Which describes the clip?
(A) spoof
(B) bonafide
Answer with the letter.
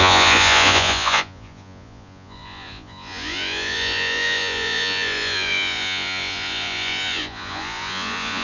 A